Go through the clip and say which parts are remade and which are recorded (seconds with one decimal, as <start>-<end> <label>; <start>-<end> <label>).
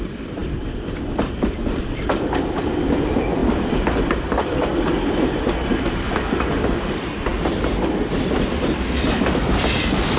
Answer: 0.0-3.4 remade; 3.4-4.2 recorded; 4.2-4.7 remade; 4.7-6.5 recorded; 6.5-7.3 remade; 7.3-8.2 recorded; 8.2-10.2 remade